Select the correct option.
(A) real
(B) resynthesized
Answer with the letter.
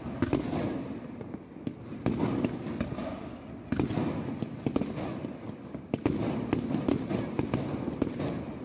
A